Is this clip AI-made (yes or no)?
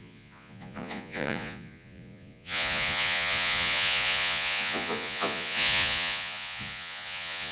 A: yes